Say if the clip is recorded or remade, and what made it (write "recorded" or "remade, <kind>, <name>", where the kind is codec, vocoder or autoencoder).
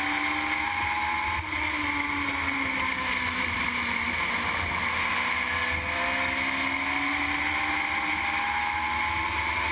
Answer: recorded